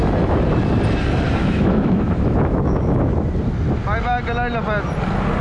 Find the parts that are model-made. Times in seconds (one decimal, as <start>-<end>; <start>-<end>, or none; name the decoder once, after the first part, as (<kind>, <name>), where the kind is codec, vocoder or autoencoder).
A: 1.4-3.1 (autoencoder, DAC-VAE)